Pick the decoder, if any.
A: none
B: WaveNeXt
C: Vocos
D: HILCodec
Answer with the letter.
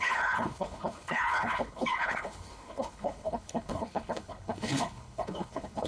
D